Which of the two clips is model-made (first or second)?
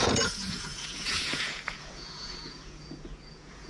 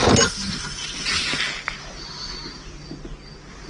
first